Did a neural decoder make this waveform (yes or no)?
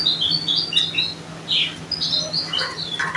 no